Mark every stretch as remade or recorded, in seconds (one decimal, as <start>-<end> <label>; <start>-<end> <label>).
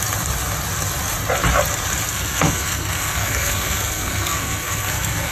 0.0-2.1 recorded; 2.1-5.3 remade